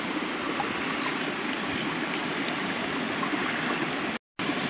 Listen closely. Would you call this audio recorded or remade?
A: recorded